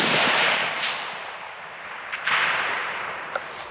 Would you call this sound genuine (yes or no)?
no